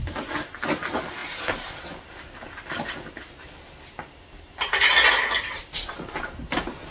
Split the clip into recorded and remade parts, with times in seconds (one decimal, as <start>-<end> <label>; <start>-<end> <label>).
0.0-1.2 recorded; 1.2-1.8 remade; 1.8-6.9 recorded